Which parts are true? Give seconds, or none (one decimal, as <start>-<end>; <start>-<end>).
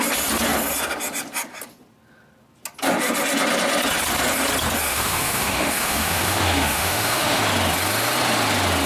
0.0-4.9; 7.4-8.9